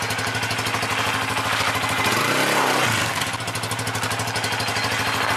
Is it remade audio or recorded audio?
recorded